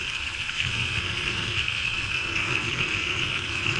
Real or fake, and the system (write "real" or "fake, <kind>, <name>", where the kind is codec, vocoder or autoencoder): fake, codec, SNAC